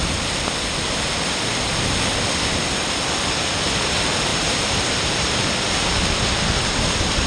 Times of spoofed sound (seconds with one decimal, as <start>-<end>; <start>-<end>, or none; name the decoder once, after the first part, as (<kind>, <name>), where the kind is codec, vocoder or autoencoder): 4.3-5.5 (vocoder, BigVGAN v2)